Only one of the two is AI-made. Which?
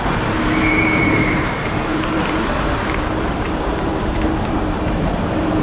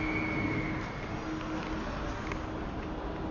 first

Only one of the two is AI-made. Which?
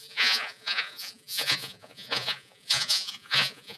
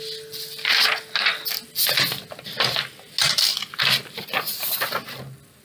first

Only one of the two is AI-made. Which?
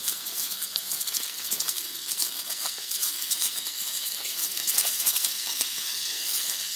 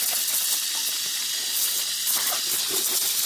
first